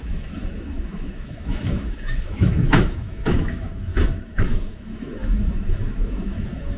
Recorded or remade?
remade